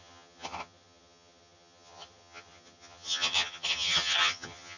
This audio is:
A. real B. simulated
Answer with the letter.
B